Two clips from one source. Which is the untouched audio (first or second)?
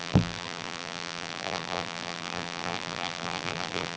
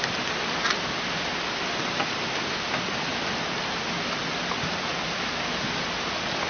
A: second